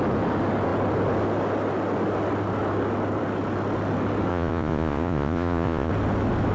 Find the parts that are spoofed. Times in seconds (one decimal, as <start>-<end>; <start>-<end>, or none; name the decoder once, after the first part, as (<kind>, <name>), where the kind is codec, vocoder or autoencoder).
4.3-5.9 (vocoder, Vocos)